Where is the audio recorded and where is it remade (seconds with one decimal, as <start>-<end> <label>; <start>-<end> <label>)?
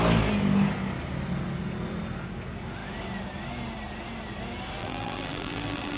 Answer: 0.0-4.8 recorded; 4.8-6.0 remade